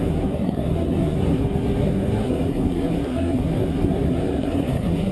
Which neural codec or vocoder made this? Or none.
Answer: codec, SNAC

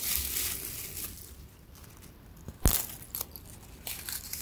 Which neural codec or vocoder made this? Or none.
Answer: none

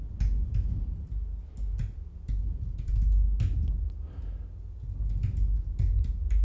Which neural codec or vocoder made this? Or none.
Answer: none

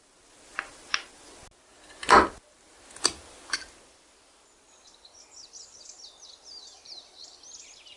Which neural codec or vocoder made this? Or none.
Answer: none